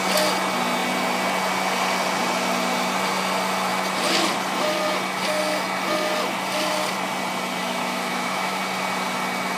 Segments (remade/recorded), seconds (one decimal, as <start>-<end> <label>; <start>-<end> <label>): 0.0-7.6 recorded; 7.6-8.6 remade; 8.6-9.6 recorded